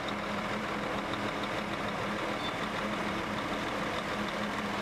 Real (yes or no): no